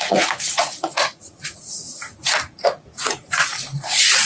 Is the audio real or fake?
fake